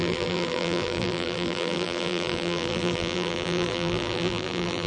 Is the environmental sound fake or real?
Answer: fake